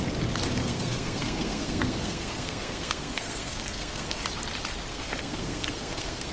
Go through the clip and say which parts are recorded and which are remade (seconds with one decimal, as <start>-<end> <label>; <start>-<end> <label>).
0.0-0.6 recorded; 0.6-4.2 remade; 4.2-4.9 recorded; 4.9-6.3 remade